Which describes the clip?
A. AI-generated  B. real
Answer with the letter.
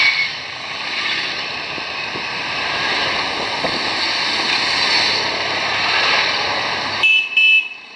B